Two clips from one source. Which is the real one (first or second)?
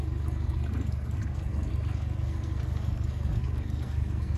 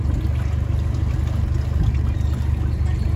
second